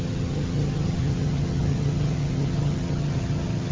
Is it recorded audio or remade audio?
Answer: remade